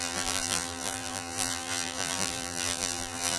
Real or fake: fake